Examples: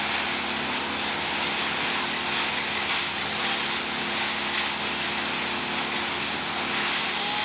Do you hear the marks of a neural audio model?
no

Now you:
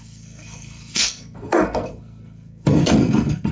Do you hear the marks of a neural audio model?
yes